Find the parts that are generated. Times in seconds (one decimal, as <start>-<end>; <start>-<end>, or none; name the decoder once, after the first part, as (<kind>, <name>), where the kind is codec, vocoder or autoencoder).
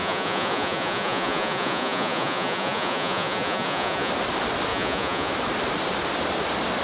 0.0-4.1 (vocoder, Vocos); 4.7-5.3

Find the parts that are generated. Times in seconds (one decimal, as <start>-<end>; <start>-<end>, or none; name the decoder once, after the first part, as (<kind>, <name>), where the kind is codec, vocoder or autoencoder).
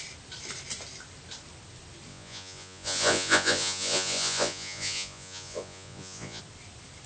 2.1-6.4 (vocoder, Vocos)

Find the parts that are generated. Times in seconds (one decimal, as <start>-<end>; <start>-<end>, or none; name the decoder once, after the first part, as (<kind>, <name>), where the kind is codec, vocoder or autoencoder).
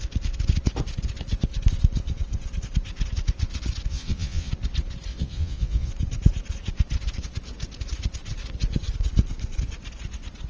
3.9-4.5 (vocoder, Vocos); 5.1-5.9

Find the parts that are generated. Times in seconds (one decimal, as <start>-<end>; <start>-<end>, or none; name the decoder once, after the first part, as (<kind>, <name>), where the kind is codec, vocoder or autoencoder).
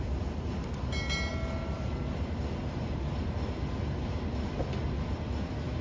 none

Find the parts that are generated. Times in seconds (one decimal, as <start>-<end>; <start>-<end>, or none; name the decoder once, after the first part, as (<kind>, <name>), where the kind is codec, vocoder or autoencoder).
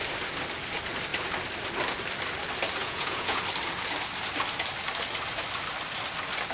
2.8-3.4 (vocoder, Vocos)